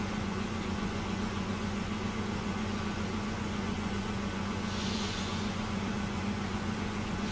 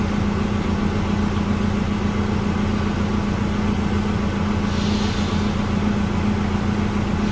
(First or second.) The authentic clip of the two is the second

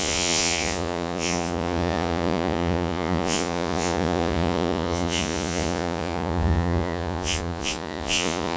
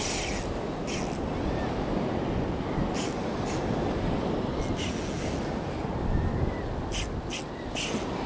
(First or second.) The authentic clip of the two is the second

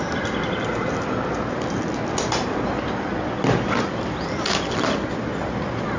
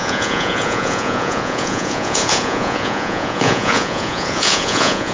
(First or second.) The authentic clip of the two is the first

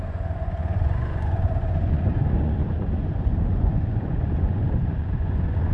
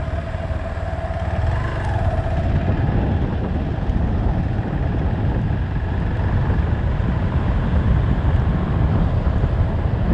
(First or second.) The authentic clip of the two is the second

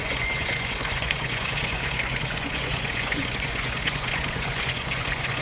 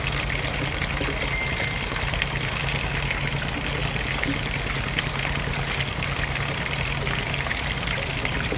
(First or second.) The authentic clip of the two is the second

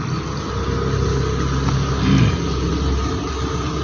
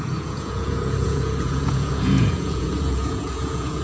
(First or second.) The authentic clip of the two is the first